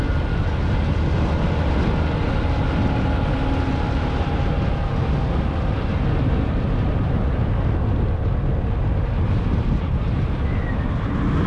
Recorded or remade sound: recorded